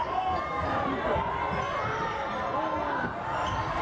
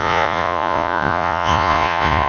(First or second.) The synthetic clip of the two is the second